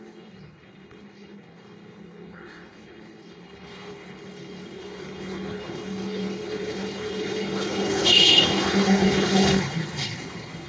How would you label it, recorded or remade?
remade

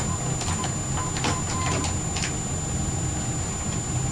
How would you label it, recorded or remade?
recorded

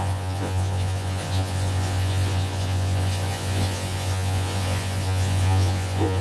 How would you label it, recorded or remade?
remade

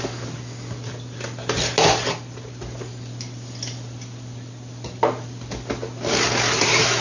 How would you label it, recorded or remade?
recorded